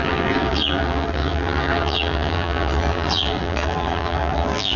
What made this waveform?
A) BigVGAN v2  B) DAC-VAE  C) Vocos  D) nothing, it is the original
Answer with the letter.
A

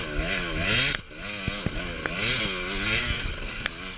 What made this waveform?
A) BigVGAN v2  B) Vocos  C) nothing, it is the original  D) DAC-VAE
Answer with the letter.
C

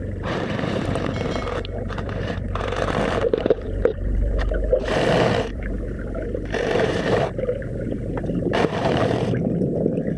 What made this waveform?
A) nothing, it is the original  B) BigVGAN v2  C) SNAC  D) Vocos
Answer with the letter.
B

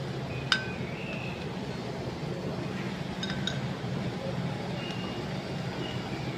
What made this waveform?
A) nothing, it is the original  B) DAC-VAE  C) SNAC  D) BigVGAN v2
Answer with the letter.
A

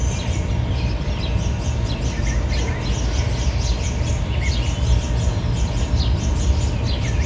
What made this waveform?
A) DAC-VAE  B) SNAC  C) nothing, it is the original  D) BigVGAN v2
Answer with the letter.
C